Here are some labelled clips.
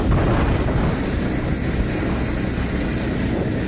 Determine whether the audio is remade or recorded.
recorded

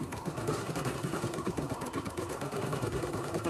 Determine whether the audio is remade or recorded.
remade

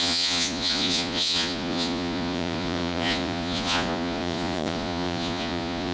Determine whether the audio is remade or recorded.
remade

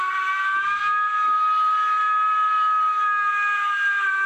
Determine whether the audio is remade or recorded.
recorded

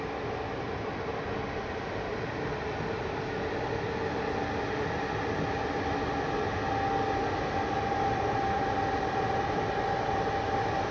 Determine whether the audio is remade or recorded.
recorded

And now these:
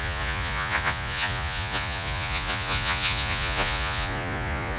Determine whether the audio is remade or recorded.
remade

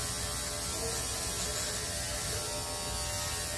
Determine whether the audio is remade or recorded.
recorded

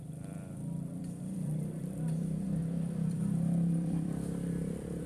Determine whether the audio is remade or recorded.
remade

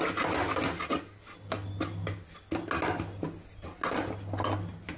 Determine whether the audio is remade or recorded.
recorded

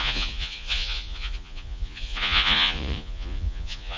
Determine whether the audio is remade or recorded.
remade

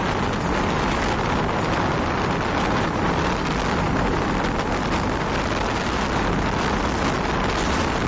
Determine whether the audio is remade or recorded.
recorded